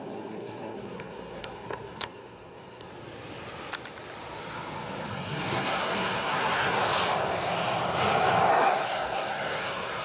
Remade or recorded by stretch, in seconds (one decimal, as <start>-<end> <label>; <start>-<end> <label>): 0.0-2.9 remade; 2.9-5.1 recorded; 5.1-6.8 remade; 6.8-8.5 recorded; 8.5-10.0 remade